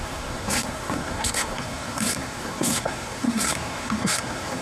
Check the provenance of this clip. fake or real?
fake